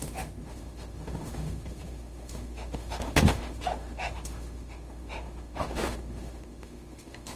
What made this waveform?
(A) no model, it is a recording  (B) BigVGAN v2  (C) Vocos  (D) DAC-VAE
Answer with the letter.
D